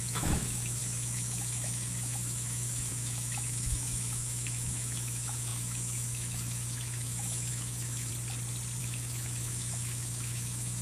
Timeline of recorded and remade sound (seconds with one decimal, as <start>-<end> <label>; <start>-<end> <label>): 0.0-8.1 remade; 8.1-8.8 recorded; 8.8-10.8 remade